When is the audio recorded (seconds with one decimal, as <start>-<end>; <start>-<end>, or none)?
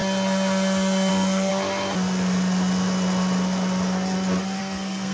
0.0-1.1; 1.5-4.6